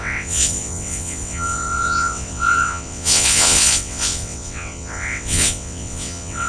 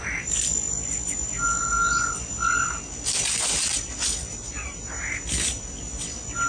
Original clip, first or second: second